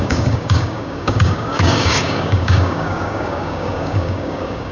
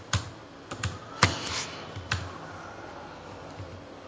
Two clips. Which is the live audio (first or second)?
second